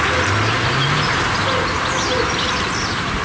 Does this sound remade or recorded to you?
recorded